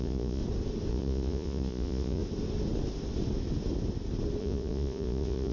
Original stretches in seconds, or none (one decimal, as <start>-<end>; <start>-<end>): 0.4-0.9; 2.2-4.4